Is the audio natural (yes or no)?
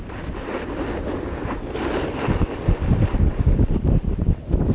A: yes